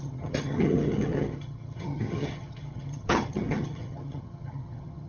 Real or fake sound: fake